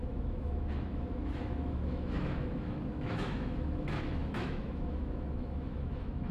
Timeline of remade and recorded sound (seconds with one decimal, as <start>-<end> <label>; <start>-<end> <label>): 0.0-6.3 remade